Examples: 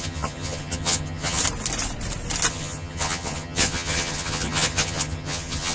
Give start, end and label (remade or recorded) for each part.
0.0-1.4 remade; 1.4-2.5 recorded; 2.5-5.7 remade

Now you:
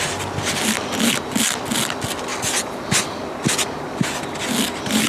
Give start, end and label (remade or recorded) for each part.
0.0-5.1 recorded

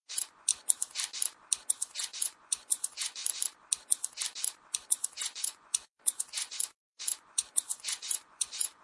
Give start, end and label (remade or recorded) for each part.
0.0-0.5 remade; 0.5-1.7 recorded; 1.7-3.2 remade; 3.2-4.9 recorded; 4.9-8.8 remade